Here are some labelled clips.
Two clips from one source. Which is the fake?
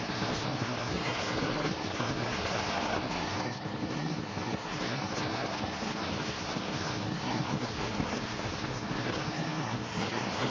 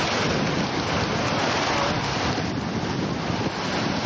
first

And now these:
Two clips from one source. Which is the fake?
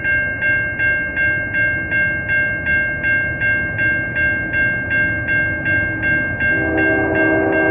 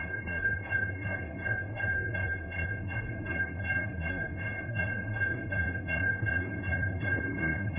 second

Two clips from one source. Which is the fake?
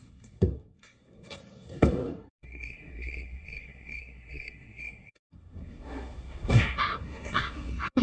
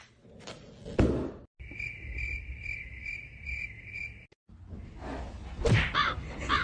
first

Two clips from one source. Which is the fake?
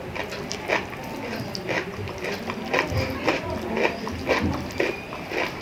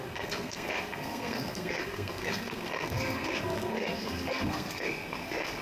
second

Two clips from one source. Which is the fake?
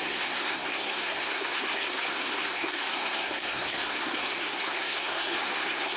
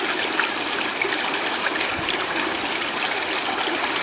first